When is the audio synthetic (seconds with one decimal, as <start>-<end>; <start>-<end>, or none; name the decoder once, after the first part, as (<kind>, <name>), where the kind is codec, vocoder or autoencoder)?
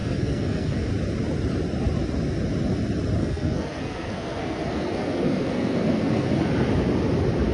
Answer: 0.0-0.9 (codec, SNAC); 3.2-6.3